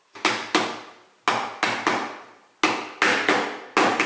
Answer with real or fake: real